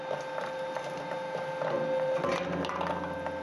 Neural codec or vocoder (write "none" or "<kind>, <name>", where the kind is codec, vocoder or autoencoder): none